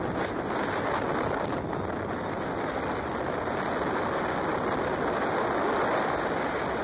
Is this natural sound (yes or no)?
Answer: yes